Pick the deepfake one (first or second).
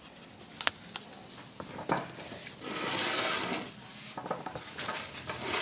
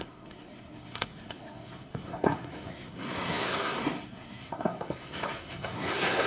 second